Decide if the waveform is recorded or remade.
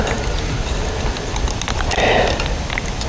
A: recorded